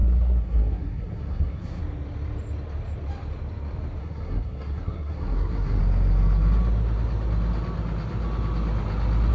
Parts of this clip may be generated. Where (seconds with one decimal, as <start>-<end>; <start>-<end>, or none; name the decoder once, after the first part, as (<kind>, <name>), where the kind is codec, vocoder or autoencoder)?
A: 0.0-1.8 (codec, SNAC); 4.0-5.8